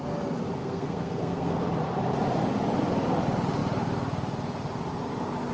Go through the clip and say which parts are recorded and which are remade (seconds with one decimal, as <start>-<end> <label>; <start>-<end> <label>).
0.0-0.6 recorded; 0.6-1.6 remade; 1.6-5.5 recorded